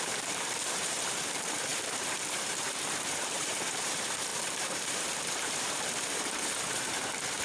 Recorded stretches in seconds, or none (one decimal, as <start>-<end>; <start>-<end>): none

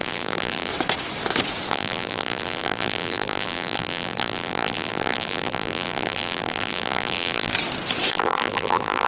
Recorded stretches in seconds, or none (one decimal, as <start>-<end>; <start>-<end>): 0.7-1.7; 7.5-8.1

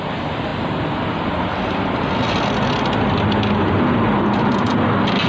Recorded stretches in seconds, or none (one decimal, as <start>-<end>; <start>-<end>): 0.0-5.3

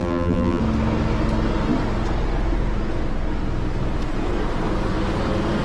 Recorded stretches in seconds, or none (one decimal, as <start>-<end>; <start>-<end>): 0.6-5.6